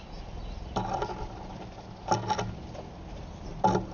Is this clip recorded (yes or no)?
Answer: yes